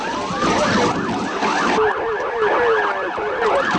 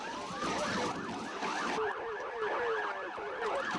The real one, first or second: first